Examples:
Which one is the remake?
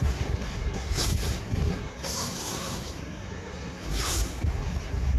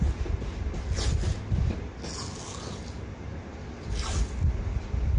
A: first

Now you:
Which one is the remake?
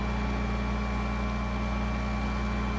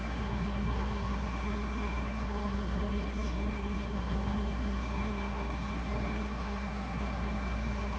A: second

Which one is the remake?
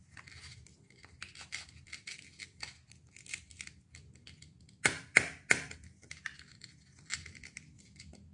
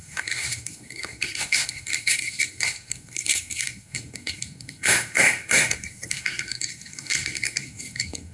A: second